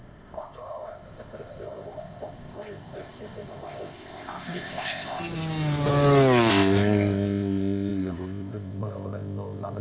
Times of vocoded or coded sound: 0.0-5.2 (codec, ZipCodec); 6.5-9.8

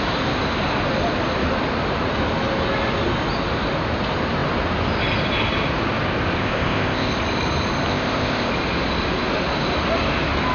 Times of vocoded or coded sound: 6.4-7.1 (codec, ZipCodec); 7.9-8.5

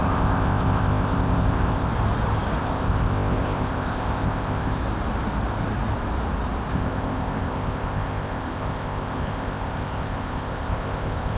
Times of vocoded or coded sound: 0.0-1.9 (codec, ZipCodec); 2.6-4.8; 6.7-11.4

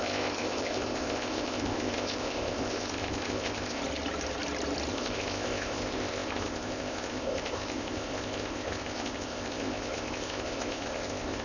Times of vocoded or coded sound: 0.0-3.8 (codec, ZipCodec); 4.9-11.4

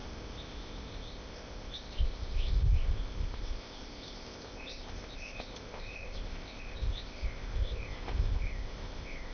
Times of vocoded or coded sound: 0.0-9.3 (codec, ZipCodec)

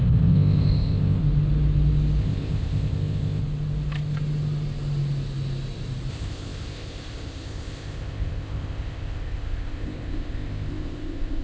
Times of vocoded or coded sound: 0.0-1.2 (codec, ZipCodec); 2.2-3.4; 6.1-11.4